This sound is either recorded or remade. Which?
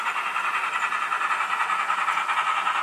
recorded